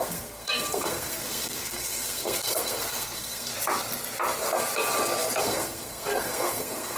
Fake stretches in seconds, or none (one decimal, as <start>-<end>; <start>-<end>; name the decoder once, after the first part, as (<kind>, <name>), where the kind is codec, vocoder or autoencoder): 0.0-3.5 (codec, SNAC); 5.4-7.0